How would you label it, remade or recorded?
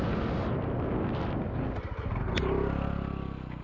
recorded